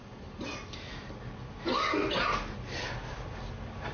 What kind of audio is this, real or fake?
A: real